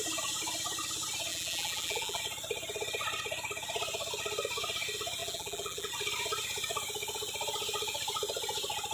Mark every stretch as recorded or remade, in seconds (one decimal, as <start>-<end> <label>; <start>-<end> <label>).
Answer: 0.0-1.3 recorded; 1.3-2.2 remade; 2.2-5.2 recorded; 5.2-5.9 remade; 5.9-8.9 recorded